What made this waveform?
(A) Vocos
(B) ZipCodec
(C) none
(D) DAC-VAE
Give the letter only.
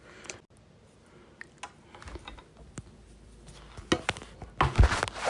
C